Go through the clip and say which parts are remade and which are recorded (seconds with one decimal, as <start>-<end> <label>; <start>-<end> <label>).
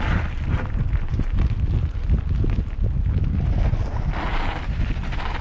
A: 0.0-5.4 recorded